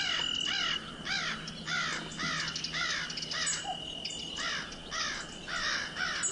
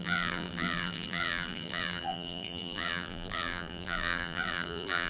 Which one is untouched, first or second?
first